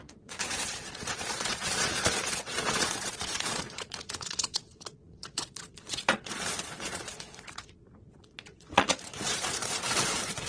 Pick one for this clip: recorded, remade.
remade